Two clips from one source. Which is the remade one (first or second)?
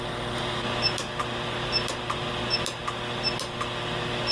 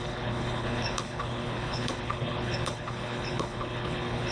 second